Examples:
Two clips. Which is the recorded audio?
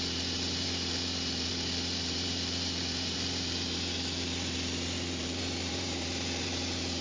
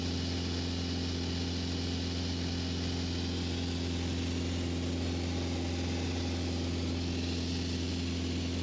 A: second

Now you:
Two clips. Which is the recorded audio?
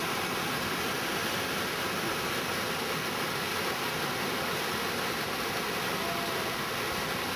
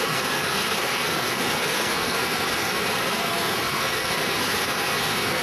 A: first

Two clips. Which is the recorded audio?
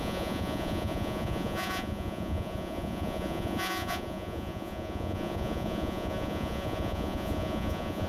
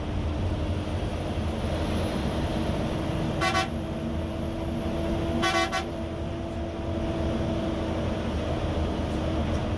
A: second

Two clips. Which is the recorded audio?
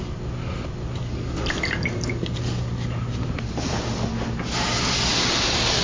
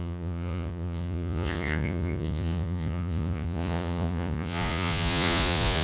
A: first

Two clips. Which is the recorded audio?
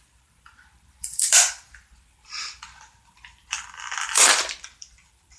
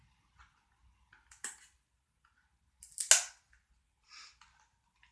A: second